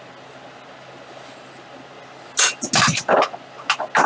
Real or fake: real